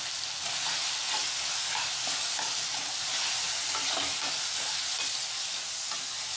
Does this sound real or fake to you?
real